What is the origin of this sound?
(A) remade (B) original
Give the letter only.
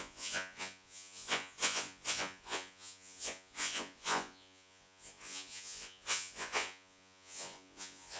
A